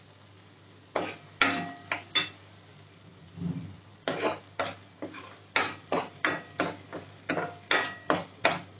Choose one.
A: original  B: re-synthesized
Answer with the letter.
A